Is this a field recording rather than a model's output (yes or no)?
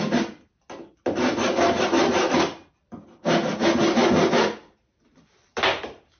yes